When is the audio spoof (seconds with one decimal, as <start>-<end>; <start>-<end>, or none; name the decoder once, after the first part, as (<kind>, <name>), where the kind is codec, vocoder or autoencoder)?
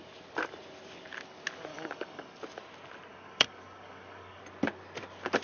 1.7-2.4 (codec, DAC); 3.1-4.4